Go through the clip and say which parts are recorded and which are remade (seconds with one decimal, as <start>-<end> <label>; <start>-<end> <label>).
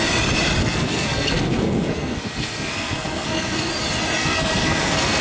0.0-0.6 recorded; 0.6-3.7 remade; 3.7-4.2 recorded; 4.2-5.2 remade